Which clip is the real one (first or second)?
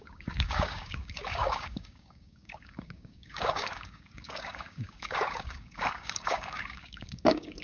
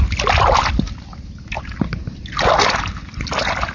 second